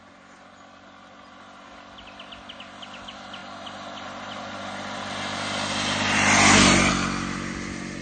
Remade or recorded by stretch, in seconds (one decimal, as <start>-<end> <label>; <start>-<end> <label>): 0.0-8.0 recorded